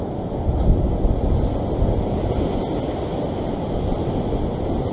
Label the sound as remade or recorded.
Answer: recorded